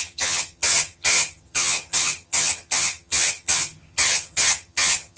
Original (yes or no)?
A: no